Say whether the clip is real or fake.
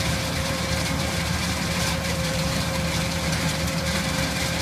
fake